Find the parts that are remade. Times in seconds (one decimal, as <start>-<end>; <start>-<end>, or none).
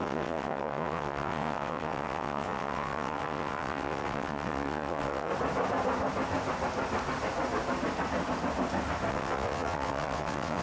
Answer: 0.0-5.3; 9.1-10.6